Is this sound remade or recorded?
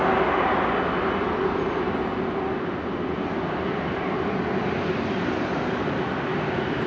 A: recorded